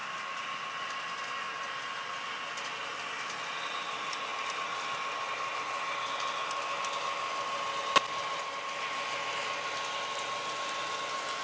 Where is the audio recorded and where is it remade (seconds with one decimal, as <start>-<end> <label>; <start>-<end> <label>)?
0.0-11.4 recorded